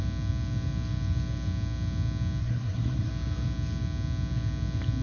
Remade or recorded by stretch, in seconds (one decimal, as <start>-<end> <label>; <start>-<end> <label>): 0.0-2.4 recorded; 2.4-3.1 remade; 3.1-5.0 recorded